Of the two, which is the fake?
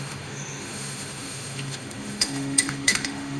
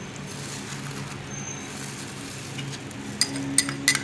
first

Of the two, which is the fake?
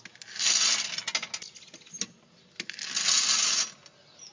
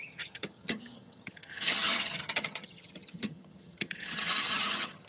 second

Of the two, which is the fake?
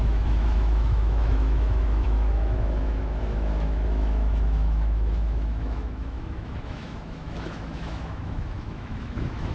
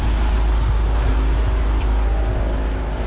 first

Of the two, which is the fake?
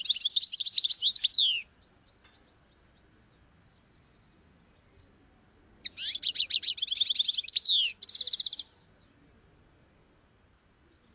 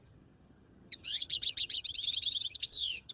second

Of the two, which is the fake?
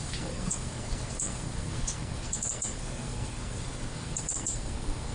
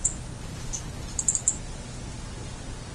first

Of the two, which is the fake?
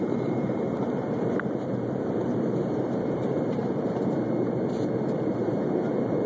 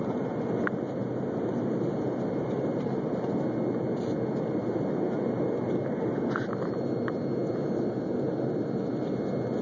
first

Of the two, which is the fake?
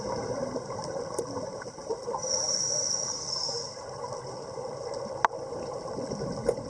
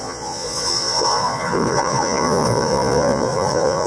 second